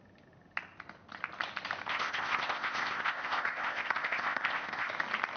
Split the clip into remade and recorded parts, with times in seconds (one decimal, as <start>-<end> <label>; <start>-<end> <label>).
0.0-1.9 recorded; 1.9-4.9 remade; 4.9-5.4 recorded